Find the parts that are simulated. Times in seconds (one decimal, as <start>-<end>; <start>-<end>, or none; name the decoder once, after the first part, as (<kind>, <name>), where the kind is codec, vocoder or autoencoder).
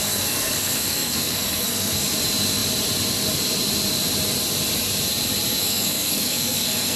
0.0-2.0 (codec, SNAC); 5.6-7.0